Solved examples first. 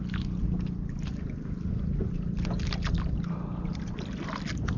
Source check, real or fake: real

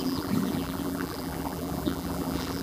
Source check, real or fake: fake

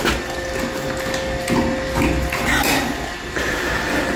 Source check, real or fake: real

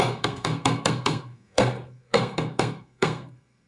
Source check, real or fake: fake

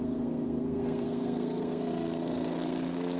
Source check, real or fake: fake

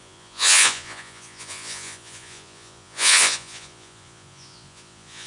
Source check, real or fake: fake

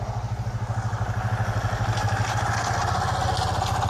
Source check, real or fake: real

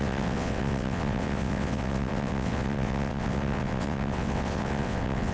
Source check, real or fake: fake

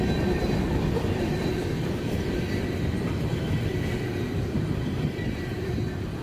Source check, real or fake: real